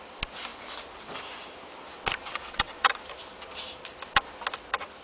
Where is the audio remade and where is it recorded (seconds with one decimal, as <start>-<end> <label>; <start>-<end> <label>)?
0.0-2.3 recorded; 2.3-2.9 remade; 2.9-5.0 recorded